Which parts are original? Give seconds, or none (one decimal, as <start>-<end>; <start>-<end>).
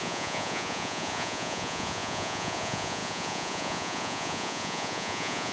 none